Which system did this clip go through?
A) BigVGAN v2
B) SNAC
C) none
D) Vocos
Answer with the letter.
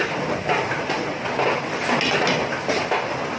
C